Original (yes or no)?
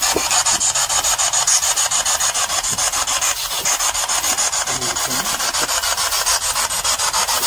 yes